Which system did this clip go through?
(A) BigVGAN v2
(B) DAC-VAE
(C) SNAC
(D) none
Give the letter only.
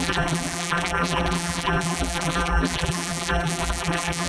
A